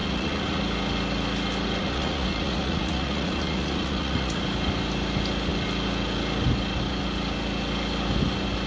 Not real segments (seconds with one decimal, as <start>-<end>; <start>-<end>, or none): 0.0-0.6; 1.8-4.4